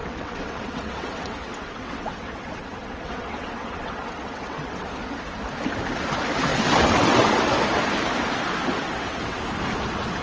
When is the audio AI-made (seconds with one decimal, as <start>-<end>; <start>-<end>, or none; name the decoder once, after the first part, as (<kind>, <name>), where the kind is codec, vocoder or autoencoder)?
0.0-4.9 (vocoder, WaveNeXt); 6.5-7.5; 8.8-9.4